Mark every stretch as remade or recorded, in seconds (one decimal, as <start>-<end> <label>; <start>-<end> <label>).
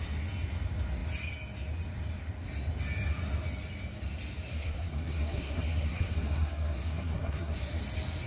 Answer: 0.0-4.5 recorded; 4.5-7.8 remade; 7.8-8.3 recorded